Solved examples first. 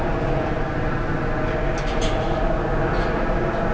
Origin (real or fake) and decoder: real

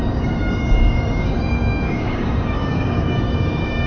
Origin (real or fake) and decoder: fake, codec, DAC